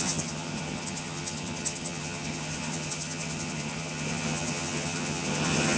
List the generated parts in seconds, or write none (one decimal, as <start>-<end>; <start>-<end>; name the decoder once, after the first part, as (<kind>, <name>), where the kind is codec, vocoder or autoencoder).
0.0-5.8 (vocoder, HiFi-GAN)